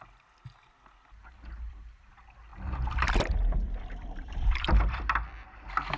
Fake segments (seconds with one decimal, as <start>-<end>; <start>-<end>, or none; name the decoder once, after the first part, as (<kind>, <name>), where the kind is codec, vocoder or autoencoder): 1.2-2.1 (vocoder, BigVGAN v2); 2.5-5.0